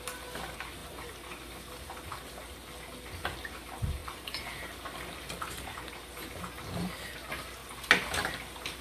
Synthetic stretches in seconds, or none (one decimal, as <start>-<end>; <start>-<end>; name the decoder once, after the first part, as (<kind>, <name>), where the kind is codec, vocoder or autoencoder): none